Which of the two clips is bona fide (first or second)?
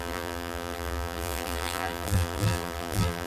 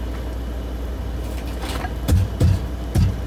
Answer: second